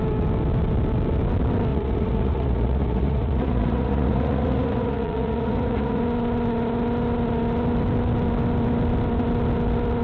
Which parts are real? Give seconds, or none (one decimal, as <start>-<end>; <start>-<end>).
0.0-1.7; 6.0-10.0